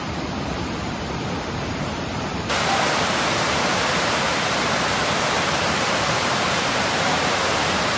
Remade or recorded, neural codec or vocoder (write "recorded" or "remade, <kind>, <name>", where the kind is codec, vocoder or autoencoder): remade, vocoder, BigVGAN v2